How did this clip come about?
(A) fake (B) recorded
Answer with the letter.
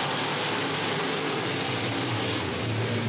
B